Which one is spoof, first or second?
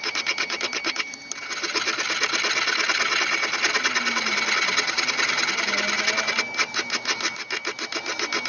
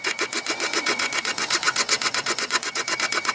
second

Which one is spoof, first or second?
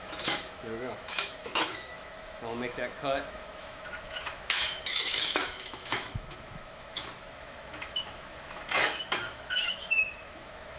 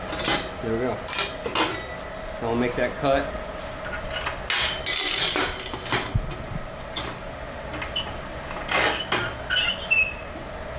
first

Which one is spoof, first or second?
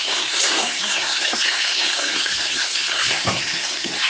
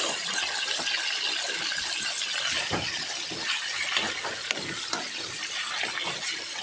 first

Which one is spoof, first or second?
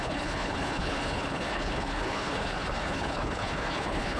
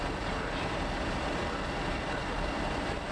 first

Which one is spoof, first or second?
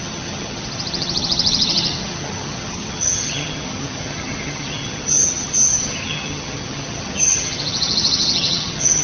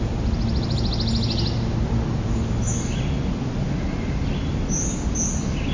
first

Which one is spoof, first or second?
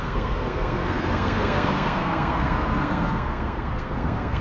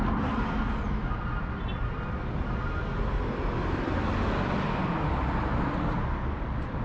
first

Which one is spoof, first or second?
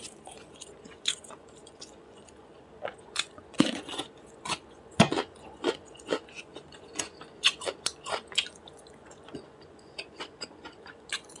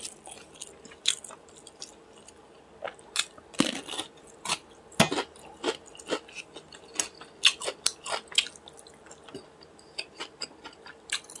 first